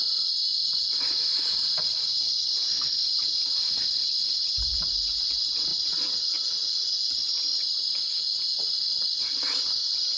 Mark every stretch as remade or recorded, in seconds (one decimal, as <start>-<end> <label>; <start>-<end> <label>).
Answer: 0.0-10.2 recorded